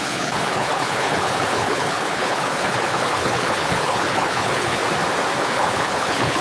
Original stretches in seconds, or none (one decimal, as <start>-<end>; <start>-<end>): 4.8-5.4